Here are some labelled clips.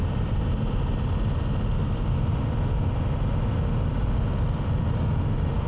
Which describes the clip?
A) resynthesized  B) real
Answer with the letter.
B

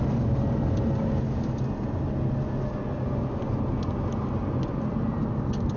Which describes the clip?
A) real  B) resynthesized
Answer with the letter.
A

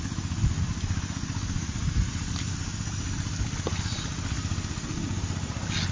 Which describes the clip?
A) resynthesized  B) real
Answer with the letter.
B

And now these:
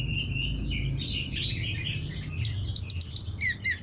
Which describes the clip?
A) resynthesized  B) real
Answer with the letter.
B